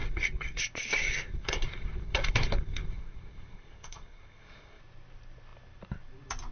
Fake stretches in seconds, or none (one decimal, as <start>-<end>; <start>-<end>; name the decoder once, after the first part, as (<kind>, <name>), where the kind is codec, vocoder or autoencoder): 0.0-0.6 (codec, SNAC); 1.0-4.8